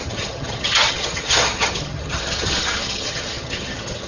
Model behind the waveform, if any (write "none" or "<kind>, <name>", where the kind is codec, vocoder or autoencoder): vocoder, HiFi-GAN